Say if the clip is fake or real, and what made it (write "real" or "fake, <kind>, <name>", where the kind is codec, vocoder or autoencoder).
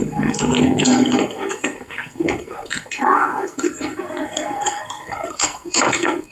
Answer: fake, codec, SNAC